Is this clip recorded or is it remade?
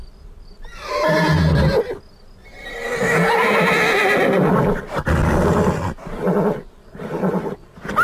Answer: recorded